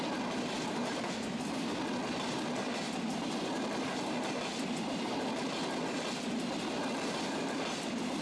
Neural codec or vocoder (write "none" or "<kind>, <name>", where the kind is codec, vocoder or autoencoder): none